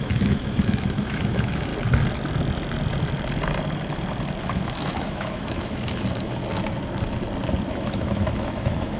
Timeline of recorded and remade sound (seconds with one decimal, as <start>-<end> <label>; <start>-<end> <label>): 0.0-1.7 remade; 1.7-4.4 recorded; 4.4-6.4 remade; 6.4-7.7 recorded; 7.7-9.0 remade